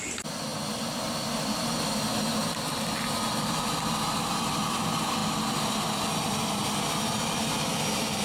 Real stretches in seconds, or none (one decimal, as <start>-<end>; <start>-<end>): 0.0-8.2